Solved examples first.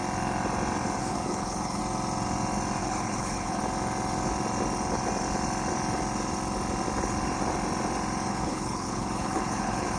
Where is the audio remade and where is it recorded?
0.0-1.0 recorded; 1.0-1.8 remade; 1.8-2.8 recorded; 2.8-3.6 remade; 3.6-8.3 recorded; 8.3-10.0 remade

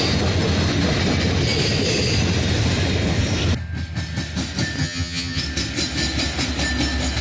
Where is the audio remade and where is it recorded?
0.0-4.8 recorded; 4.8-5.4 remade; 5.4-7.2 recorded